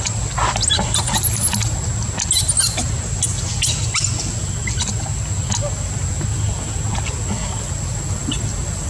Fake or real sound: real